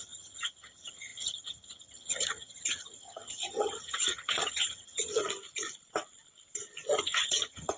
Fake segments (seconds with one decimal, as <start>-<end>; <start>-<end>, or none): 0.0-5.1; 7.0-7.8